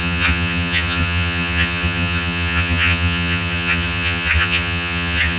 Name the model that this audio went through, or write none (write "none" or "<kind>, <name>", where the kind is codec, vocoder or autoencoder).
vocoder, HiFi-GAN